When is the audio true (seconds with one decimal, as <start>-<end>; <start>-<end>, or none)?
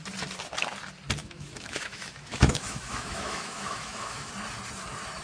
0.0-1.2; 4.3-5.2